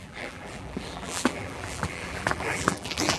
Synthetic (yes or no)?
yes